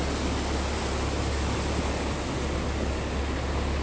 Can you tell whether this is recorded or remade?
recorded